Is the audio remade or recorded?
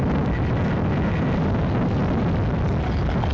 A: remade